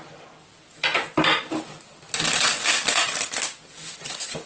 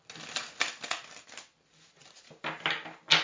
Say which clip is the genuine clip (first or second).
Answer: second